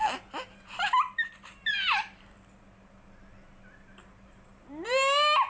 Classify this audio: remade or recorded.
recorded